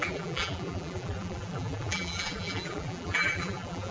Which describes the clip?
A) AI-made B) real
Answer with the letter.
A